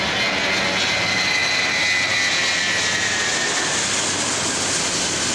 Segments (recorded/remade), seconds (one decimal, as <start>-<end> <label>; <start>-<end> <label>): 0.0-5.3 recorded